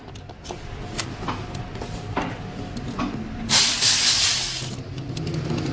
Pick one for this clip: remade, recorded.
recorded